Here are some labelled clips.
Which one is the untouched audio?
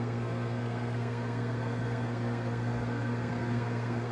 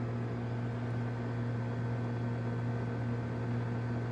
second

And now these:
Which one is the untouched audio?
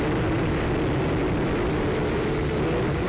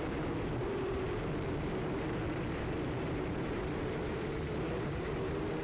first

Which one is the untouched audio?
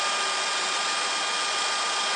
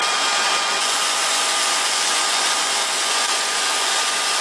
first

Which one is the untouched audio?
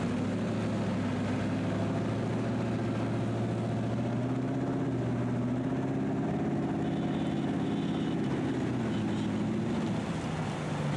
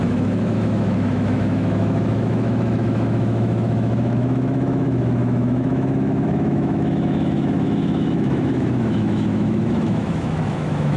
first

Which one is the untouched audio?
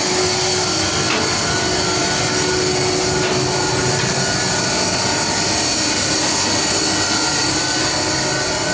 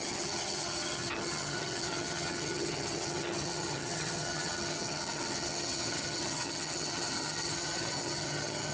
first